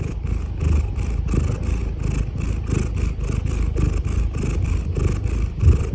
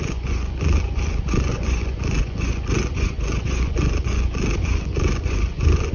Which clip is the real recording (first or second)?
first